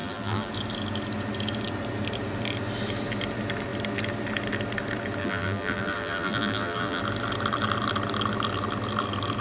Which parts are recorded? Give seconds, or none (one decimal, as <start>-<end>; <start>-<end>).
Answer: 0.5-5.2; 7.0-9.4